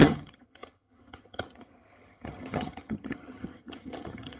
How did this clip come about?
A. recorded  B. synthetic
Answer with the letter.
B